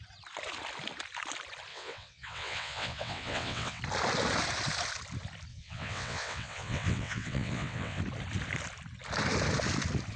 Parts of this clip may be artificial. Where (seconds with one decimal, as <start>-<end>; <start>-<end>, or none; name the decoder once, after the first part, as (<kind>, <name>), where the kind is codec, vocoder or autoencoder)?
1.7-3.8 (vocoder, WaveNeXt); 5.5-8.0